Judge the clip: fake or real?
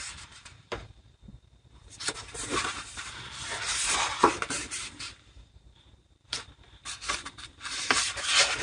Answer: fake